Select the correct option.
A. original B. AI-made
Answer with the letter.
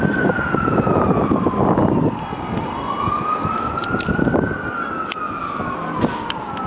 A